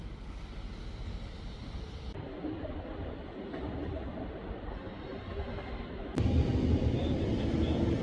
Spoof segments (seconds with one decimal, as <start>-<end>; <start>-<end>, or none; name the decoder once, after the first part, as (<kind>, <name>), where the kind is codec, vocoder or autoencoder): 1.0-3.5 (vocoder, BigVGAN v2)